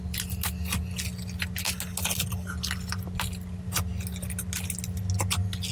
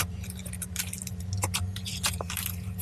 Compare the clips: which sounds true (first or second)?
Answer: first